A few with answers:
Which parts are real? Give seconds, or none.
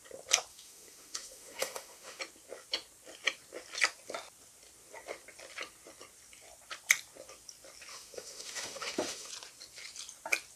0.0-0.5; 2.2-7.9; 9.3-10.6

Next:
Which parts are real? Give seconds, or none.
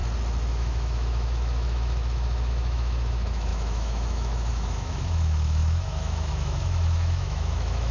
0.0-0.5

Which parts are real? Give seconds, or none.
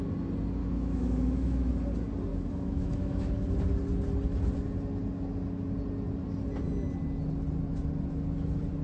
0.0-0.6; 1.7-2.3; 3.3-8.8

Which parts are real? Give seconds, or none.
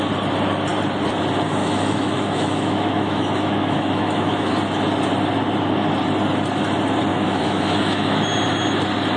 0.0-1.6; 4.5-7.1; 8.2-9.2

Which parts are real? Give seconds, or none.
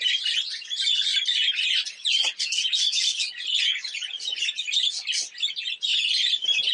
0.0-6.7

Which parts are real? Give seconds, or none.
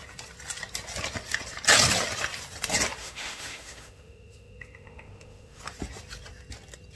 0.0-3.0; 5.6-7.0